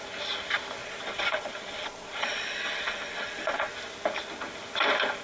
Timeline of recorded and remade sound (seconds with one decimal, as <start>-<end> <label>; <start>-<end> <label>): 0.0-0.8 recorded; 0.8-3.7 remade; 3.7-5.2 recorded